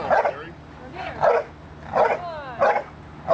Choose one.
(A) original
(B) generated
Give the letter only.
A